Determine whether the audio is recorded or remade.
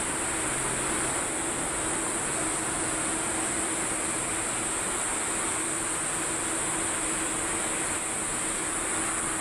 recorded